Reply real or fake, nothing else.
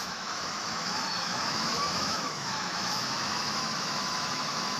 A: fake